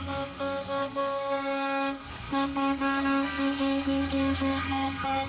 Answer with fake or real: fake